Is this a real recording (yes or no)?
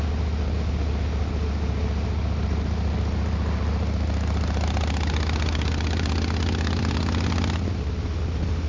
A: yes